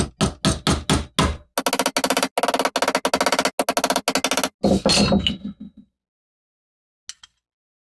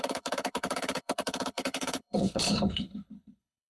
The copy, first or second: second